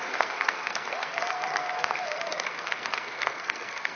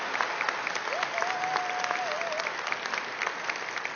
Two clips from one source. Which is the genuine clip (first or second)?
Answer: second